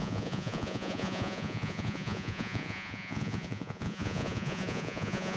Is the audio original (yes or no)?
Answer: no